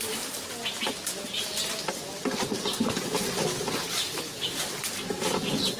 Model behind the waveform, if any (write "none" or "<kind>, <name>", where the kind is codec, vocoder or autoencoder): none